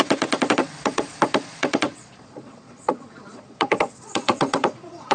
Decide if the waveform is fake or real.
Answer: fake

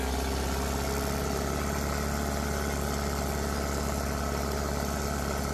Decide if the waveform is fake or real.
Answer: real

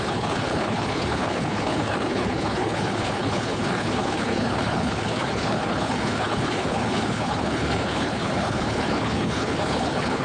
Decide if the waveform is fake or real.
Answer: fake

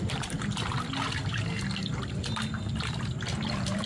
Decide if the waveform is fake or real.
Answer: real